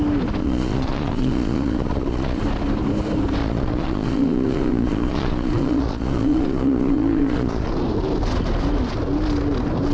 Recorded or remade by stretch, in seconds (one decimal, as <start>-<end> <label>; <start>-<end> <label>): 0.0-0.4 recorded; 0.4-2.4 remade; 2.4-3.4 recorded; 3.4-7.7 remade; 7.7-9.9 recorded